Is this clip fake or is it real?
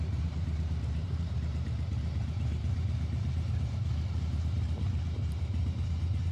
fake